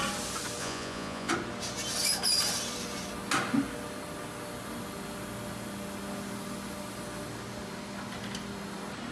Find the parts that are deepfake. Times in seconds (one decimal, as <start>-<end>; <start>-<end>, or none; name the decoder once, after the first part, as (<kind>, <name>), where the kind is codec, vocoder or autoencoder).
0.6-1.3 (vocoder, Vocos)